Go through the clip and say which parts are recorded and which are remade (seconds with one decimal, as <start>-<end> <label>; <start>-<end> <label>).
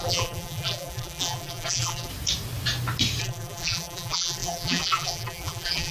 0.0-2.1 remade; 2.1-3.2 recorded; 3.2-5.9 remade